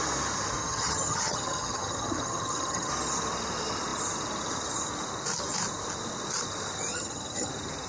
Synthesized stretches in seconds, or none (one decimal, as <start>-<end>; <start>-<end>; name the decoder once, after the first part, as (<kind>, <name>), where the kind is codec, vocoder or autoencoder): 0.6-2.9 (vocoder, HiFi-GAN); 6.9-7.5